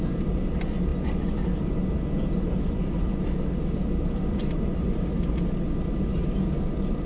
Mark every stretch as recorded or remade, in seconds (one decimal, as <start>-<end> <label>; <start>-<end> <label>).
0.0-7.1 recorded